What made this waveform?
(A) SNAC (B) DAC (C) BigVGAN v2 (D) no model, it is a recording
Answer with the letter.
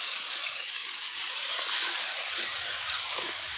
B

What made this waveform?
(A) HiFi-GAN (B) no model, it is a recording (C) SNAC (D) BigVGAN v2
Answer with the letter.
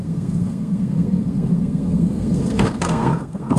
C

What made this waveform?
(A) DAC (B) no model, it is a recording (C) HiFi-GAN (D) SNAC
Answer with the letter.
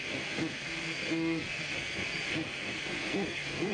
D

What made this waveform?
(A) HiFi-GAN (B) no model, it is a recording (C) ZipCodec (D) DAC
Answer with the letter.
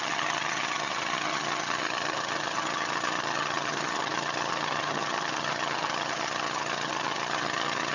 A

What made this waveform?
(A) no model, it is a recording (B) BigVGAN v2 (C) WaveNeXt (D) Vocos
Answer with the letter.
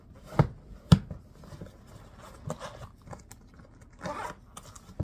A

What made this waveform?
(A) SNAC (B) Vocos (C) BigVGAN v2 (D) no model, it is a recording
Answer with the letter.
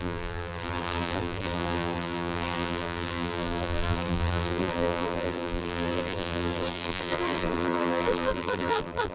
C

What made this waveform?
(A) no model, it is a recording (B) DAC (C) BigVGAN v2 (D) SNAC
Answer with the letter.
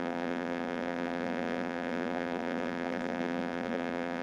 C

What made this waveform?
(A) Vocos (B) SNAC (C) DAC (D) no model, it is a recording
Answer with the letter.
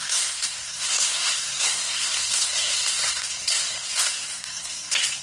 B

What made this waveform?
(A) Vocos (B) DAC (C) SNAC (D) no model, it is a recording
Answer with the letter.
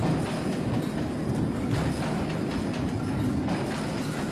D